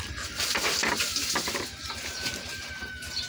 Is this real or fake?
real